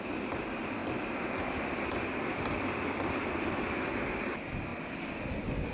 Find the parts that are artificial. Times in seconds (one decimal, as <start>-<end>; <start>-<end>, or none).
none